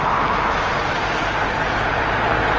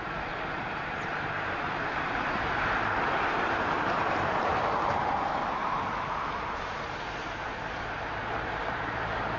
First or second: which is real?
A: first